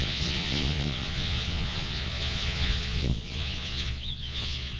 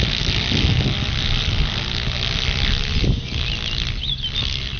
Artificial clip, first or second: first